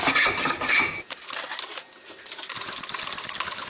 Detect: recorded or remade recorded